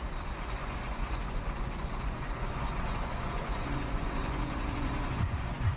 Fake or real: fake